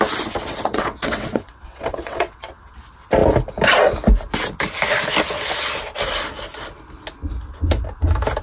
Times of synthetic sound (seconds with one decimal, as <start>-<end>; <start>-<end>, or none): 0.5-2.8